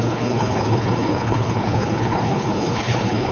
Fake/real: fake